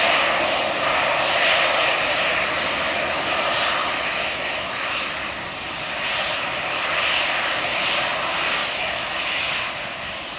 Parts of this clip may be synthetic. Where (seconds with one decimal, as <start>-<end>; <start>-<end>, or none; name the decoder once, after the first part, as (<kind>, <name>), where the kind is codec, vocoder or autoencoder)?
3.8-5.2 (autoencoder, DAC-VAE); 8.6-9.5